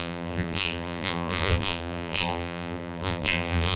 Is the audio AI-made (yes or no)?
yes